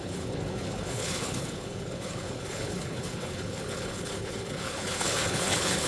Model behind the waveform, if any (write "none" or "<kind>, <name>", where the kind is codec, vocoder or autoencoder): codec, HILCodec